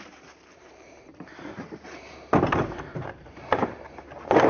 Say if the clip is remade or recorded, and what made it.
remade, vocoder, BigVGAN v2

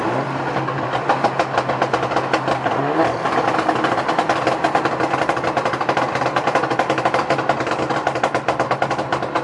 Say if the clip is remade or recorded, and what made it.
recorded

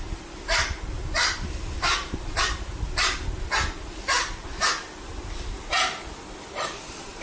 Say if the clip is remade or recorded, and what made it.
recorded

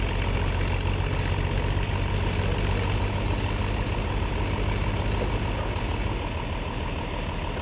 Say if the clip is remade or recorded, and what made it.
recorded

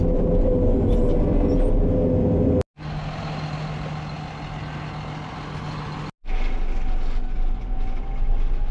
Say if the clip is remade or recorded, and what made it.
recorded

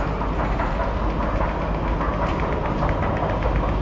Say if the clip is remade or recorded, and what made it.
recorded